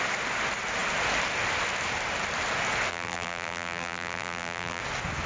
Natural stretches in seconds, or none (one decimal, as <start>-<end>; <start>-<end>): 0.0-2.9; 4.8-5.3